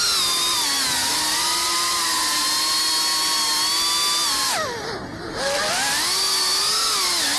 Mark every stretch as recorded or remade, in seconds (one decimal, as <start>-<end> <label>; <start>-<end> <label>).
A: 0.0-7.4 recorded